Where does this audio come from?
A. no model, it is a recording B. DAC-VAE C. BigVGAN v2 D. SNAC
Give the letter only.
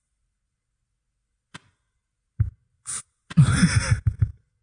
A